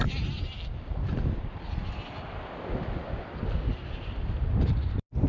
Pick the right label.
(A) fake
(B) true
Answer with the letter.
B